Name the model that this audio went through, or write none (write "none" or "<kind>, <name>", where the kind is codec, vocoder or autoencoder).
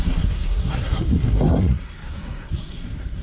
codec, SNAC